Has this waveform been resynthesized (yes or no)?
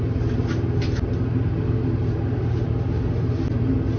no